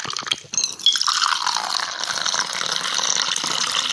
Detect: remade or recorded recorded